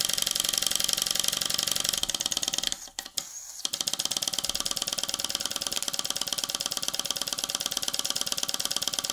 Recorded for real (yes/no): yes